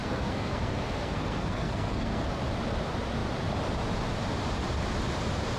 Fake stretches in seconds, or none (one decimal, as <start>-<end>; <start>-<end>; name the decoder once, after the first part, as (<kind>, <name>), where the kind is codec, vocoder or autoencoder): 0.0-2.4 (codec, SNAC)